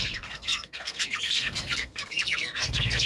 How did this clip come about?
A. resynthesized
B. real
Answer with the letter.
A